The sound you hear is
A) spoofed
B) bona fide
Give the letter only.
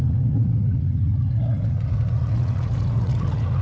A